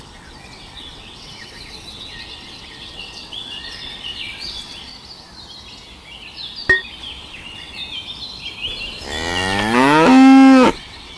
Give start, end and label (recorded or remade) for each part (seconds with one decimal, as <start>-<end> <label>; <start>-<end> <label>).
0.0-4.9 remade; 4.9-7.0 recorded; 7.0-7.8 remade; 7.8-10.7 recorded; 10.7-11.2 remade